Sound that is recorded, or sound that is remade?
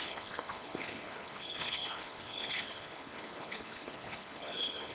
remade